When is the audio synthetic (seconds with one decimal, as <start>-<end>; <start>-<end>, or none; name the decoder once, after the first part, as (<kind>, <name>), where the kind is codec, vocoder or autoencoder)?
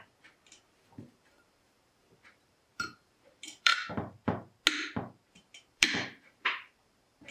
0.0-3.7 (vocoder, BigVGAN v2); 5.3-7.3